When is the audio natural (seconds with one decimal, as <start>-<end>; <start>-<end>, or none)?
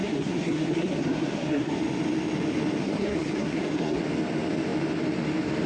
1.7-2.8; 4.0-5.7